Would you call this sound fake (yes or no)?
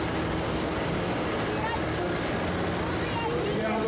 no